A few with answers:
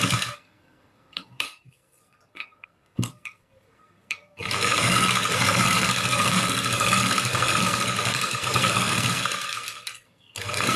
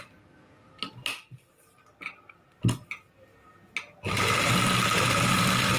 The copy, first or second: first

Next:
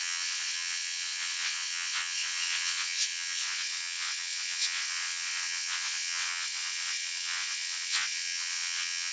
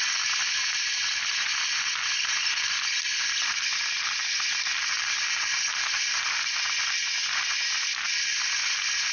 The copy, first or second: first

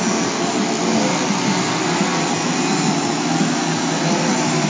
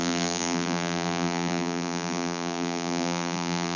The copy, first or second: second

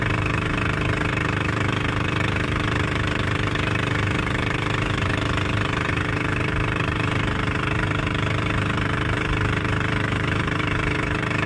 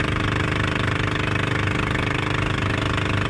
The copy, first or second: first